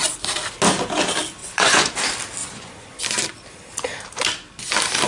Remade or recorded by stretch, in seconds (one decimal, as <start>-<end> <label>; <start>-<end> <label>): 0.0-1.4 recorded; 1.4-1.9 remade; 1.9-2.4 recorded; 2.4-3.0 remade; 3.0-5.1 recorded